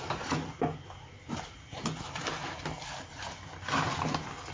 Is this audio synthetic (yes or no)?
no